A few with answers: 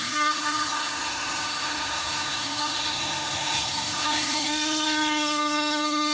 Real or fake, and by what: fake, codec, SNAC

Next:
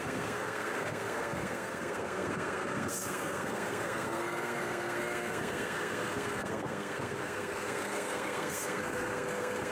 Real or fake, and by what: fake, codec, SNAC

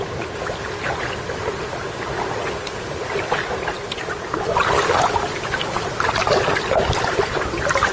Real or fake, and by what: real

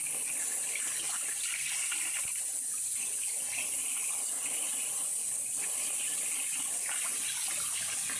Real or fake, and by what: real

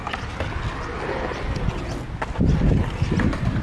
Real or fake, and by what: real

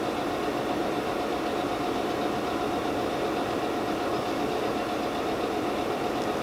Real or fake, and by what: real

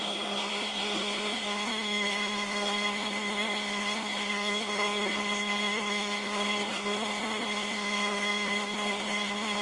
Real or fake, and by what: fake, codec, SNAC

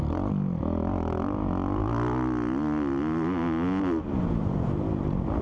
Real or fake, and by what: real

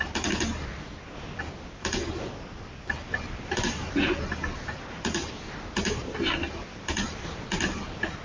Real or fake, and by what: real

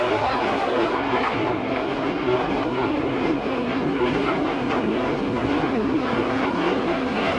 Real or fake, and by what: fake, codec, SNAC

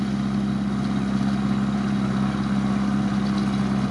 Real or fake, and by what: real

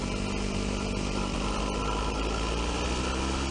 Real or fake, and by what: real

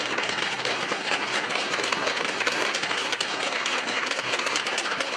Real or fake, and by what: fake, codec, SNAC